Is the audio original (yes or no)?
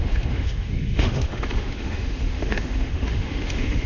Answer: no